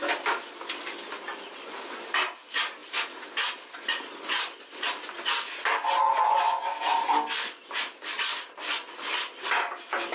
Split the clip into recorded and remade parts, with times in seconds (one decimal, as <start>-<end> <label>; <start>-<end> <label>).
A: 0.0-10.1 recorded